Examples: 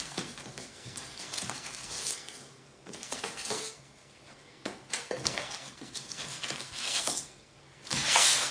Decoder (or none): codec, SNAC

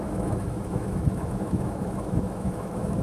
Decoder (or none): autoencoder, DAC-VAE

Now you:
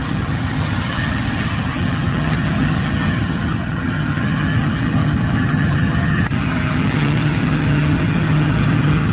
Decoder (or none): vocoder, HiFi-GAN